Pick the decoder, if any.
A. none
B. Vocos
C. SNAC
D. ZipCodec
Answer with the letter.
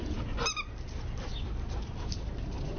A